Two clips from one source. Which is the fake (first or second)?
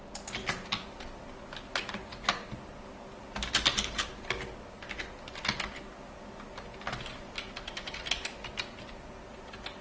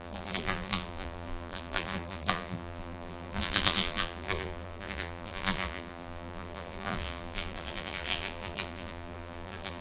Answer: second